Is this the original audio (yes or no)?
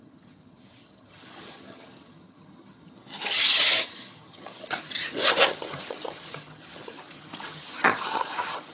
no